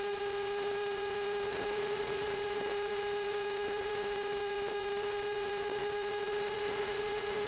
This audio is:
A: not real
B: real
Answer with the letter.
A